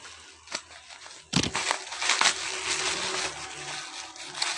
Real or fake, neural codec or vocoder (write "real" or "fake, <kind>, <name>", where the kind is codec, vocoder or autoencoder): real